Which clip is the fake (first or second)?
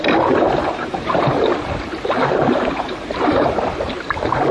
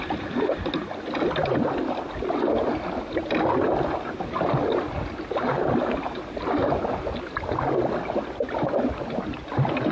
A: first